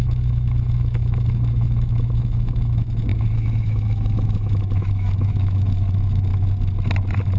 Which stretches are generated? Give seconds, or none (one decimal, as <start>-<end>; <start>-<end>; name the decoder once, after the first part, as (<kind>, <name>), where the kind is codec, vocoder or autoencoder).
0.0-6.3 (autoencoder, DAC-VAE)